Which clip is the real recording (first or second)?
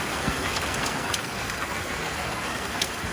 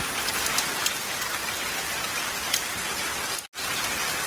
second